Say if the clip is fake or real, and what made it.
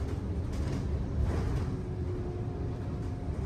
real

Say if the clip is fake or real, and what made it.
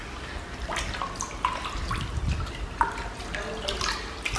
real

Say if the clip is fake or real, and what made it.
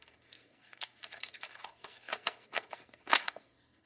fake, codec, SNAC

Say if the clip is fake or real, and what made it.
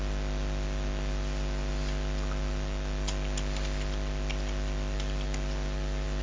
real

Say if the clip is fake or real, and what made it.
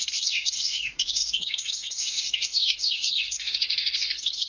fake, codec, SNAC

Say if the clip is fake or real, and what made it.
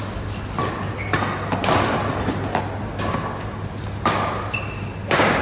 real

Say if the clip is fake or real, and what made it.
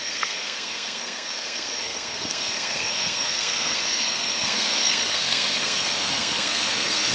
fake, codec, SNAC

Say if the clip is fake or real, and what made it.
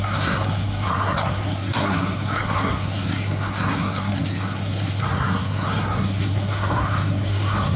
fake, codec, SNAC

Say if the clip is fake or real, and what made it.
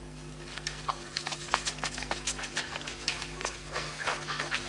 fake, codec, SNAC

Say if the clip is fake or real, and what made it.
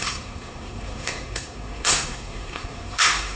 fake, codec, SNAC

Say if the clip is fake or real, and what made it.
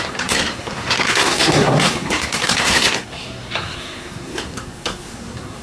fake, codec, SNAC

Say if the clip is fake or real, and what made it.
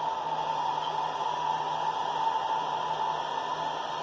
real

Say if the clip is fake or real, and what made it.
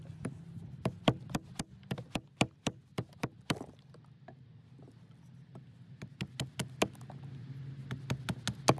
real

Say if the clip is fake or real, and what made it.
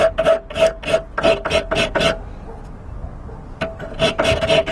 real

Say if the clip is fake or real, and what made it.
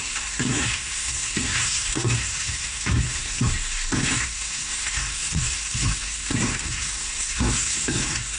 fake, codec, SNAC